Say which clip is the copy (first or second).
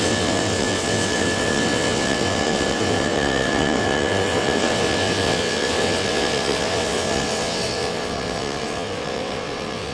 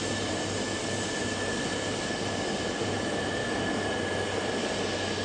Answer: first